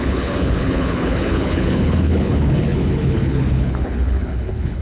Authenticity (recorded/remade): remade